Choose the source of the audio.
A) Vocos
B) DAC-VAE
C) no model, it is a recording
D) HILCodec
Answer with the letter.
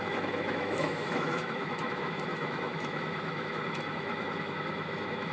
B